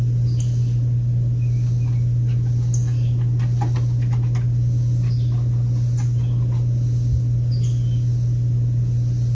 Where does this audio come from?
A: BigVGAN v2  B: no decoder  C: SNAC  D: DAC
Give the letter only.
B